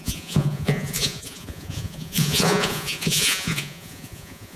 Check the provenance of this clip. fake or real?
fake